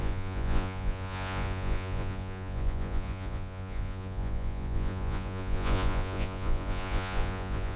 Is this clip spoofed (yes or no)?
yes